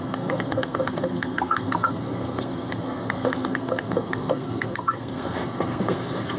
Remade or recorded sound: remade